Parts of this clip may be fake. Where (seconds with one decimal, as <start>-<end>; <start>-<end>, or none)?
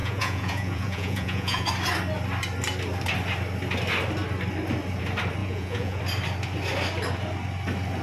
0.0-1.7; 5.4-6.0